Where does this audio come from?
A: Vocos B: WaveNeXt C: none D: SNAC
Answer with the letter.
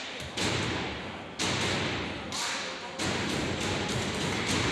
C